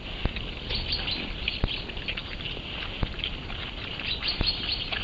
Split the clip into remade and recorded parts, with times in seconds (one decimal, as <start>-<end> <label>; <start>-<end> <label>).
0.0-5.0 recorded